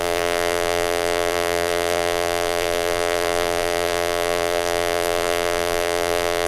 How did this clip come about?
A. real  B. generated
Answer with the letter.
B